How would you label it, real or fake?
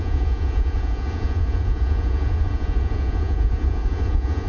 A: fake